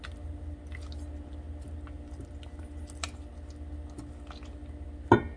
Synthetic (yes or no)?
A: no